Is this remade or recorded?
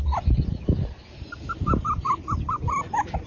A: recorded